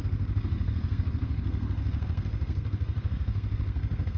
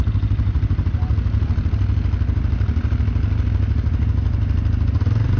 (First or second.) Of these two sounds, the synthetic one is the first